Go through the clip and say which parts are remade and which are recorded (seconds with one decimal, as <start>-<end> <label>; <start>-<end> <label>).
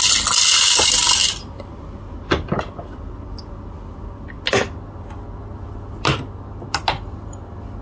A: 0.0-7.8 recorded